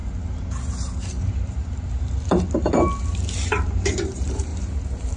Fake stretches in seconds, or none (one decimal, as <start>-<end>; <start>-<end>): 3.1-5.2